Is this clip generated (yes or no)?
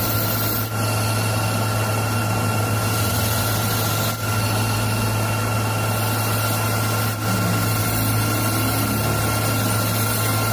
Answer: no